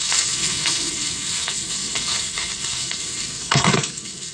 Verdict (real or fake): fake